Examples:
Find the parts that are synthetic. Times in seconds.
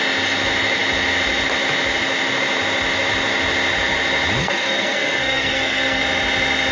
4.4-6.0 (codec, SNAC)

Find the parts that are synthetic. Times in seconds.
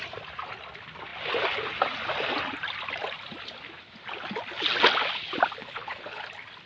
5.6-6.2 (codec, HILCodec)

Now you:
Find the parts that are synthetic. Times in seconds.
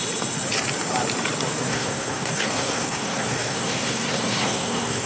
1.7-5.1 (codec, SNAC)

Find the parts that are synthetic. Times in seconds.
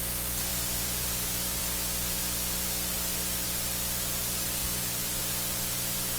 0.5-1.6 (vocoder, BigVGAN v2); 4.6-5.2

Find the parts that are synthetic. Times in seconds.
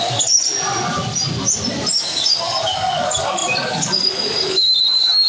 0.0-0.5 (codec, DAC); 2.0-5.3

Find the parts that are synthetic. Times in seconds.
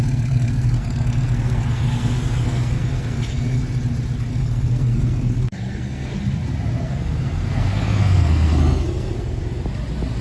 0.0-3.6 (codec, SNAC); 4.3-6.1; 6.8-9.4